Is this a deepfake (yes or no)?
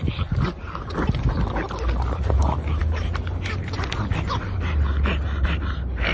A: no